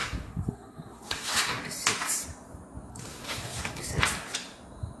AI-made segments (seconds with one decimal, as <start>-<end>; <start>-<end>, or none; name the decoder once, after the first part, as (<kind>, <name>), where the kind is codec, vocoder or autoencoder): 0.0-1.6 (codec, SNAC); 2.9-3.9